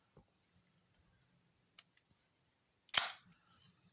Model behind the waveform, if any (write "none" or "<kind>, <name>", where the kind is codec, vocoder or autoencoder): none